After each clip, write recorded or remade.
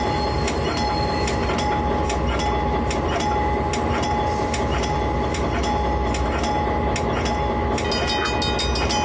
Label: recorded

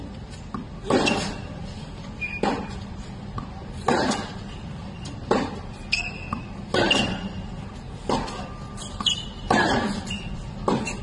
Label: recorded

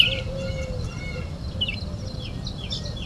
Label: recorded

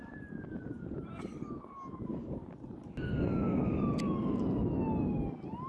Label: recorded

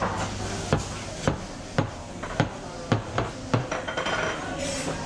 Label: recorded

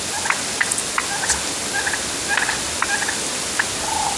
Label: recorded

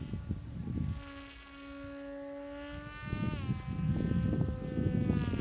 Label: recorded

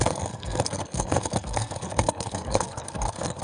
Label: remade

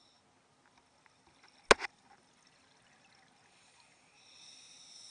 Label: recorded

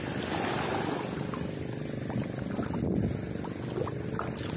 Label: recorded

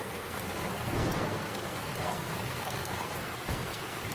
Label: remade